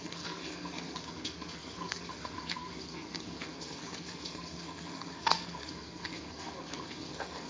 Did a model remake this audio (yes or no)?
yes